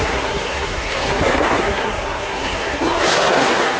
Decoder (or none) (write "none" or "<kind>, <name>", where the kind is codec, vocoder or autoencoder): codec, SNAC